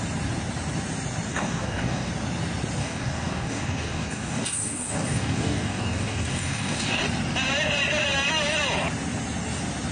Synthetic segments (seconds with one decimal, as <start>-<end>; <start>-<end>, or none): 1.3-2.1; 2.8-7.0